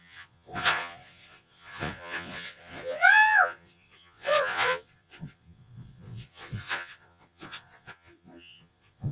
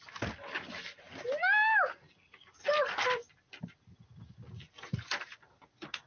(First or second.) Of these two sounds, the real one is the second